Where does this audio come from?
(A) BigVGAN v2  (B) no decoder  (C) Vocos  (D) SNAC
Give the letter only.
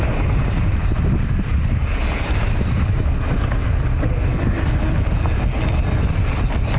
B